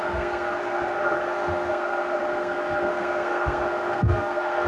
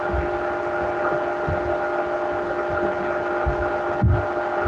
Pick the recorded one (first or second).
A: second